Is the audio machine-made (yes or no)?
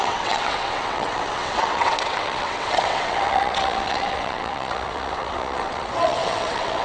yes